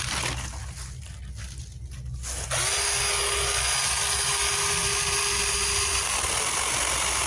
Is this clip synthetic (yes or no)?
no